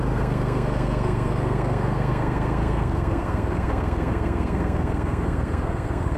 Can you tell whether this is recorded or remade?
remade